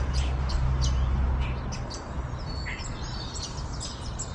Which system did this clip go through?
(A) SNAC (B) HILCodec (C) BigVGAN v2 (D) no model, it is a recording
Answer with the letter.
D